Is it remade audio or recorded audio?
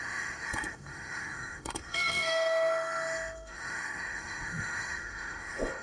remade